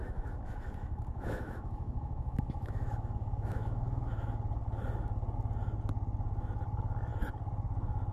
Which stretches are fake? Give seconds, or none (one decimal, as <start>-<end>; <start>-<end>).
0.0-4.4